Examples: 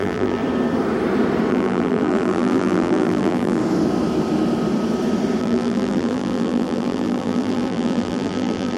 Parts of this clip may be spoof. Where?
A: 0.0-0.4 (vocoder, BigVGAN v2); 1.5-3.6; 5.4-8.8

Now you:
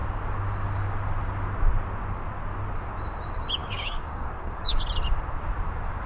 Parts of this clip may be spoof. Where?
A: 3.6-4.8 (codec, DAC)